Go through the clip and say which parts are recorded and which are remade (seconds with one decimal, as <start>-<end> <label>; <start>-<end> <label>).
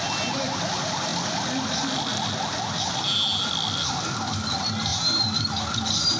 0.0-6.2 recorded